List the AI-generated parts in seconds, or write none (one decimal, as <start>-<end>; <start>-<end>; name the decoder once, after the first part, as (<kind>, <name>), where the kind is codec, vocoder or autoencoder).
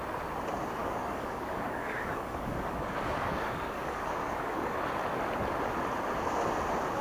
0.8-4.8 (codec, DAC)